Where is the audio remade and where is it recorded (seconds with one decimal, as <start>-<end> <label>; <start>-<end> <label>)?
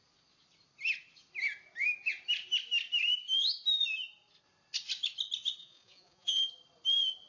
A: 0.0-5.6 recorded; 5.6-6.5 remade; 6.5-7.3 recorded